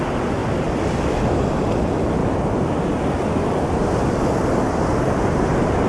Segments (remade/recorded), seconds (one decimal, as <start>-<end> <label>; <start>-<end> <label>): 0.0-5.9 recorded